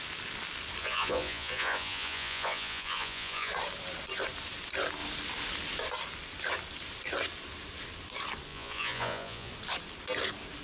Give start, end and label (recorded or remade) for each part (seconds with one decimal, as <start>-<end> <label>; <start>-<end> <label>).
0.0-0.8 recorded; 0.8-3.5 remade; 3.5-8.5 recorded; 8.5-9.5 remade; 9.5-10.6 recorded